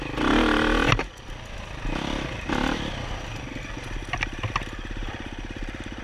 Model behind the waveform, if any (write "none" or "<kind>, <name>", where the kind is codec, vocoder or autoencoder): none